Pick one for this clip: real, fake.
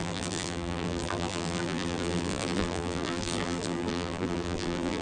fake